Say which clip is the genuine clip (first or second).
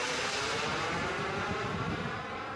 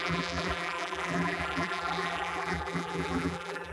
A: first